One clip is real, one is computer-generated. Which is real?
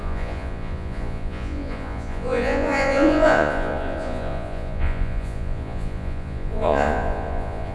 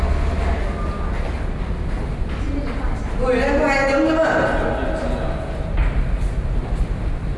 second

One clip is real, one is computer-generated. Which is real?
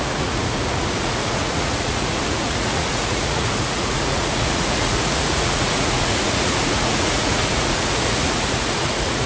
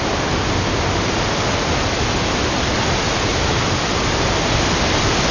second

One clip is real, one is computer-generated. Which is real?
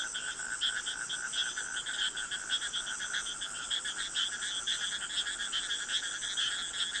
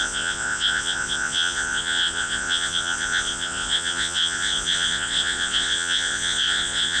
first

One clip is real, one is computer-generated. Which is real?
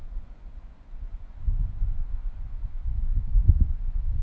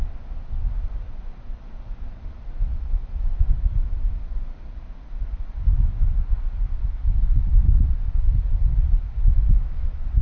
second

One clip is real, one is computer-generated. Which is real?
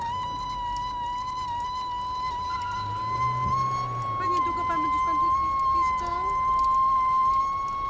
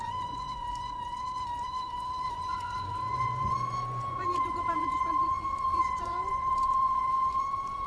first